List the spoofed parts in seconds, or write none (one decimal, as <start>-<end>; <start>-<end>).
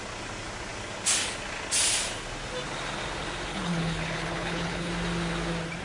3.5-4.9